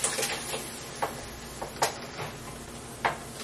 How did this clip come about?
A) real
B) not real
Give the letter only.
A